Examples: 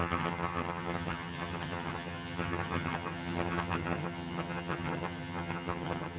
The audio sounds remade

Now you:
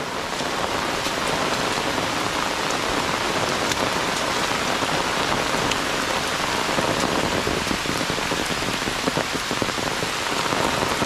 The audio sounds recorded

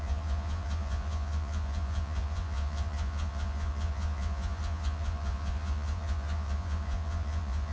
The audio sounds remade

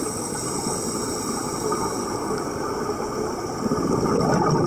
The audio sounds recorded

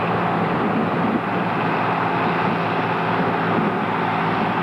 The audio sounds recorded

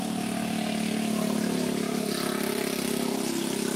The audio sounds recorded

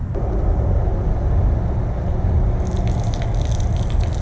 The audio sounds recorded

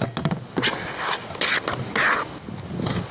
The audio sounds recorded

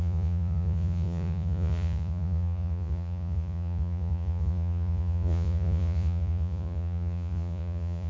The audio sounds remade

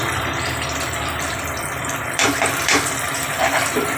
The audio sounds remade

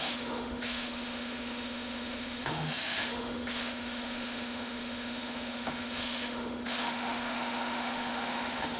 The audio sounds remade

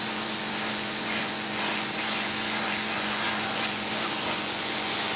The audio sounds remade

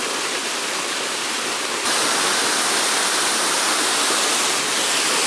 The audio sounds recorded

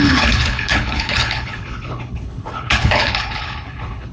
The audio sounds remade